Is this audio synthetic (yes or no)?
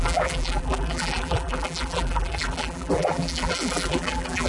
yes